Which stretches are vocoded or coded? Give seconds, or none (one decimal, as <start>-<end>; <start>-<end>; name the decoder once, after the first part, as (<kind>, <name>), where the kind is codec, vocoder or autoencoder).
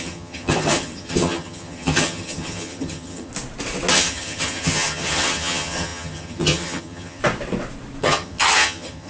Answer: 0.0-3.3 (vocoder, HiFi-GAN); 3.9-7.2; 8.0-9.1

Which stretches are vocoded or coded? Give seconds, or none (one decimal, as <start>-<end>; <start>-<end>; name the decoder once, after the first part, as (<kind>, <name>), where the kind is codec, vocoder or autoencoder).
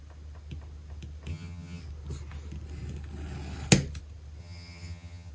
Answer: 1.3-1.8 (vocoder, HiFi-GAN); 4.4-5.3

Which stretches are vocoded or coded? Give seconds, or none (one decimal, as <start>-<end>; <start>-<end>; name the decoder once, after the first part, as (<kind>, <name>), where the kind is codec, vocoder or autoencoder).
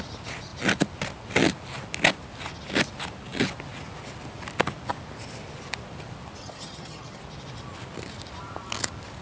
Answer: 6.4-7.2 (vocoder, HiFi-GAN)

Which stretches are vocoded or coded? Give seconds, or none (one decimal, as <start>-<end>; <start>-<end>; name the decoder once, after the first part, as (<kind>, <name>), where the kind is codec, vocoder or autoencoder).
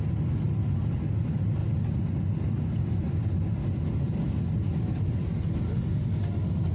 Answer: none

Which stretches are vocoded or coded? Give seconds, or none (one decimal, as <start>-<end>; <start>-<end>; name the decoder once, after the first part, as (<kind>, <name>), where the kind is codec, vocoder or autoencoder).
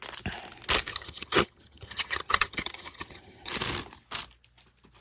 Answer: 0.9-3.5 (vocoder, HiFi-GAN)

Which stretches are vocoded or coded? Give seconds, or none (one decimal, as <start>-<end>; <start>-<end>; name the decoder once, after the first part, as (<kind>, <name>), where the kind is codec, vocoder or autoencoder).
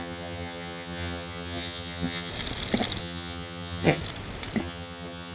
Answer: 0.0-2.3 (vocoder, HiFi-GAN); 3.0-4.0; 4.6-5.3